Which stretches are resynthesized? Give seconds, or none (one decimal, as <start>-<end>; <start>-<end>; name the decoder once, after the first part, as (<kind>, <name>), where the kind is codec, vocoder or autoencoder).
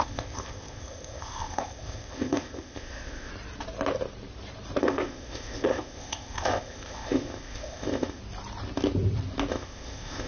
0.0-3.3 (codec, ZipCodec); 4.8-8.2; 9.5-10.3